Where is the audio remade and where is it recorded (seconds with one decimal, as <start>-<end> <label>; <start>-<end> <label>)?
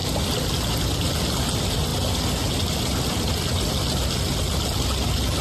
0.0-5.4 recorded